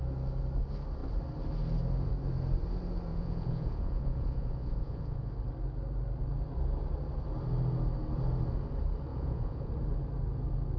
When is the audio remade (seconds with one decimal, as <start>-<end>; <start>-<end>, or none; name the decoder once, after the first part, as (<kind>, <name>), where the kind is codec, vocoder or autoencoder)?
3.1-5.3 (vocoder, Vocos); 9.1-9.7